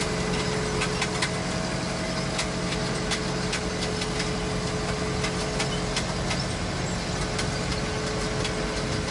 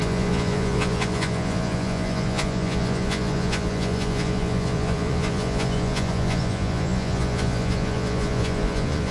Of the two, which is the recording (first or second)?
first